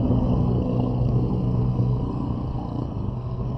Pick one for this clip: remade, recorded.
remade